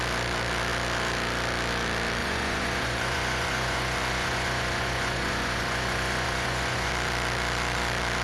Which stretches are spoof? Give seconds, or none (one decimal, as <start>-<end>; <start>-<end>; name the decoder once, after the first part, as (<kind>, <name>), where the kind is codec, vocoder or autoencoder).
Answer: 2.2-6.9 (vocoder, Vocos)